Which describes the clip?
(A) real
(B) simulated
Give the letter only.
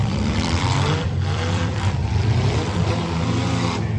B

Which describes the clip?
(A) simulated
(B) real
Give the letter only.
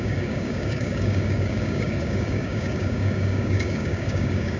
A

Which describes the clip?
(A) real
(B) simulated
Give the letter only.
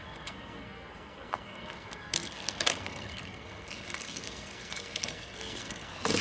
B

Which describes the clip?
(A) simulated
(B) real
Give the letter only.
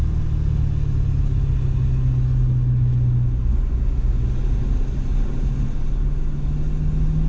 B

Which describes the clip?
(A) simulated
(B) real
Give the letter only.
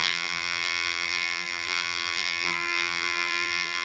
A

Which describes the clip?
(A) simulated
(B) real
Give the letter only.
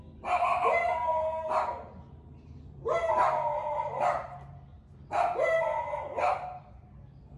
B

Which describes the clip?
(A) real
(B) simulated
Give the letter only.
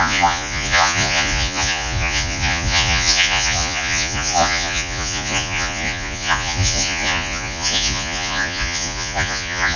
B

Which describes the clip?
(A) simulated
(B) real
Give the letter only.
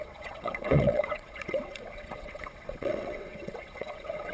A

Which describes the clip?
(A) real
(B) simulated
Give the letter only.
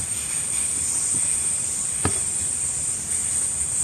B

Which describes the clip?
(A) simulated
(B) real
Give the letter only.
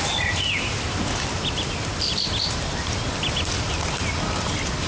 B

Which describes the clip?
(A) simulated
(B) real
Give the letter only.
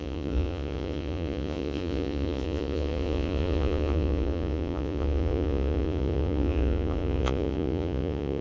A